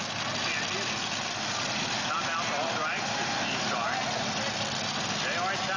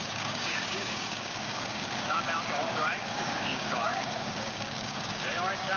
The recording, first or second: first